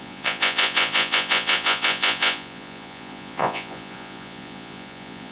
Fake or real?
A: fake